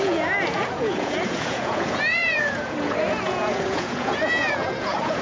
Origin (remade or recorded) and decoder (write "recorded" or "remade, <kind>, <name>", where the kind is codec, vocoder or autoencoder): remade, vocoder, Vocos